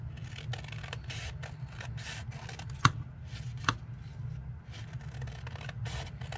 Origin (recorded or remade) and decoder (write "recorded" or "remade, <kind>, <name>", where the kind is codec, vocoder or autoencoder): recorded